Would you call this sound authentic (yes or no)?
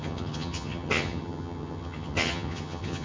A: no